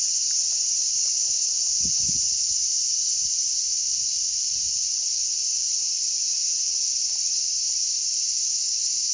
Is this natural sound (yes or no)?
no